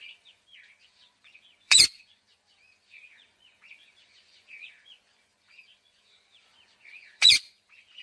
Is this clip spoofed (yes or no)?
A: yes